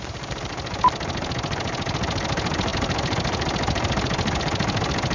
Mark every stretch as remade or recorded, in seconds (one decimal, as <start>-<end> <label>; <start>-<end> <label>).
0.0-5.1 recorded